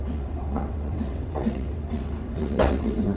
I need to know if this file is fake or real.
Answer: fake